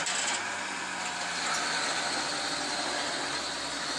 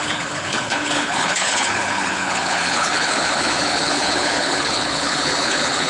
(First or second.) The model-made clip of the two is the second